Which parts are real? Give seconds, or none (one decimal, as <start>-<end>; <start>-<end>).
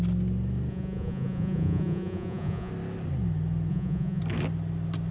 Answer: 0.0-0.7; 2.7-3.7; 4.2-5.1